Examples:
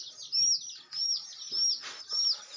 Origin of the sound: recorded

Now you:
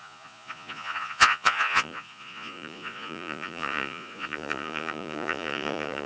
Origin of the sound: remade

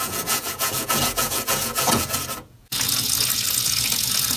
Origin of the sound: remade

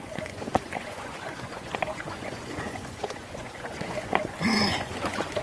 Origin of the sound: remade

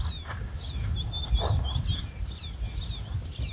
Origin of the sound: recorded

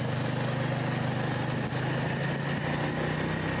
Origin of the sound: recorded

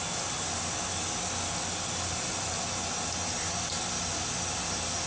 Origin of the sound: recorded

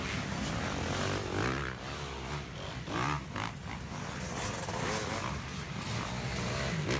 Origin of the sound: recorded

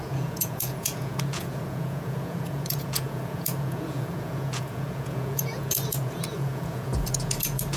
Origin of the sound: remade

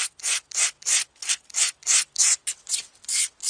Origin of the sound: recorded